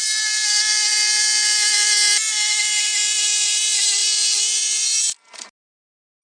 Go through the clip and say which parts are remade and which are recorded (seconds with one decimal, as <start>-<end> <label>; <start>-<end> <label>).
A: 0.0-6.2 recorded